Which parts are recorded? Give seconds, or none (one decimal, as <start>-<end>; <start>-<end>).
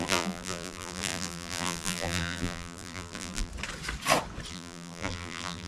3.5-4.5